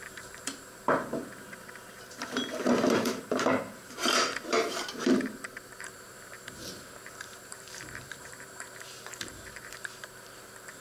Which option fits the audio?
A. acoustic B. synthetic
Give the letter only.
B